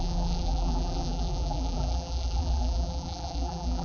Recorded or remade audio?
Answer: remade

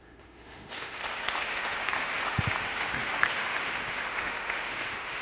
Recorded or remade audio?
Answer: remade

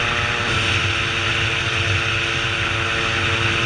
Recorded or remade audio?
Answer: recorded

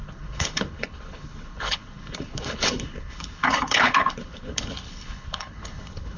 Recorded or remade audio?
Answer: remade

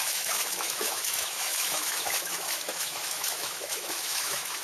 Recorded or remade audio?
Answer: remade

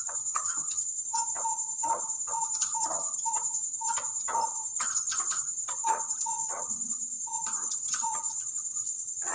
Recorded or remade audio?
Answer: remade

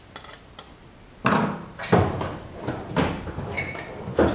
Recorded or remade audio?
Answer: recorded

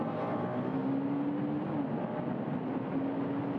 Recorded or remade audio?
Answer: recorded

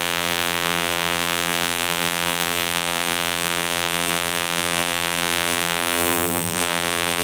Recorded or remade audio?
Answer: remade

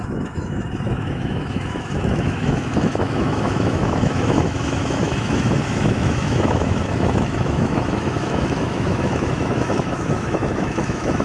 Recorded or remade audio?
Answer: remade